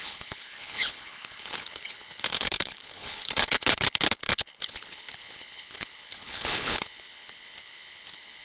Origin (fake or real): fake